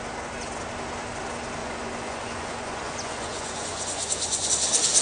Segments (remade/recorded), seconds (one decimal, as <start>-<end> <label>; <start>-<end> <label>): 0.0-1.6 recorded; 1.6-4.5 remade; 4.5-5.0 recorded

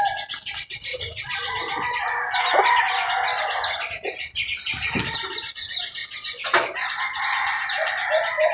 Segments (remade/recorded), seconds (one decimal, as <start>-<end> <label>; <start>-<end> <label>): 0.0-0.9 recorded; 0.9-2.8 remade; 2.8-8.5 recorded

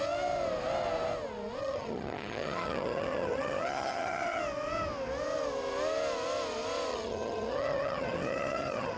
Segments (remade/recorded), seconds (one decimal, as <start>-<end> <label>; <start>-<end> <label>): 0.0-1.6 recorded; 1.6-4.4 remade; 4.4-6.9 recorded; 6.9-9.0 remade

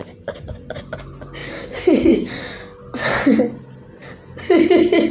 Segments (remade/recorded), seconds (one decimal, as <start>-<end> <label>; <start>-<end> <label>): 0.0-1.4 recorded; 1.4-2.3 remade; 2.3-5.1 recorded

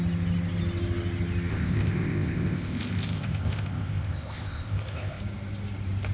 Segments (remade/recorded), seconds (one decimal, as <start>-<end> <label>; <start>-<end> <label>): 0.0-1.5 recorded; 1.5-5.2 remade; 5.2-6.1 recorded

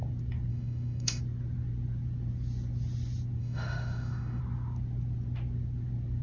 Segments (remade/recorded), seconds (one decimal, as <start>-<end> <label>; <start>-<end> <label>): 0.0-0.5 recorded; 0.5-1.2 remade; 1.2-3.4 recorded; 3.4-4.4 remade; 4.4-6.2 recorded